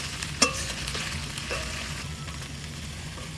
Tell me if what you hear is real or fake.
fake